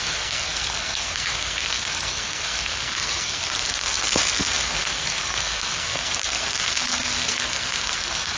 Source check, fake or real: fake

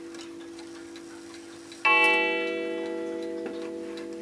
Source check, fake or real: real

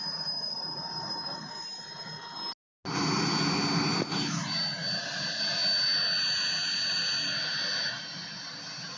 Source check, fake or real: real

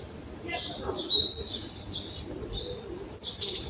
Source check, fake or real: real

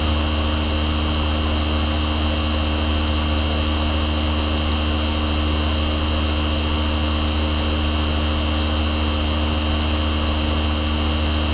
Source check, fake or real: real